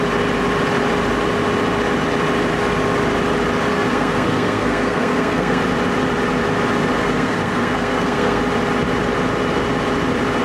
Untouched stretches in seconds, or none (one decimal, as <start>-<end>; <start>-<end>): 0.0-3.7; 5.6-7.0; 8.4-10.4